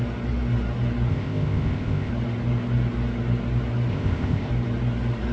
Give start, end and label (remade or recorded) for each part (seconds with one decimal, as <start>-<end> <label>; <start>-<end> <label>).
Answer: 0.0-1.1 recorded; 1.1-2.1 remade; 2.1-3.9 recorded; 3.9-4.5 remade; 4.5-5.3 recorded